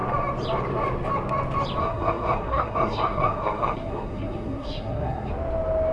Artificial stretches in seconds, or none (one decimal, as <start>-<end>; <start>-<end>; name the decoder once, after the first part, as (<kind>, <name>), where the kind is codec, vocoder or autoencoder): 1.8-5.3 (codec, SNAC)